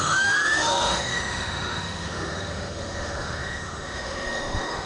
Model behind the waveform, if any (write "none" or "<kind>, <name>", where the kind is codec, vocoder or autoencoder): autoencoder, DAC-VAE